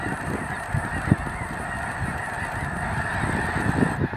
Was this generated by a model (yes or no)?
yes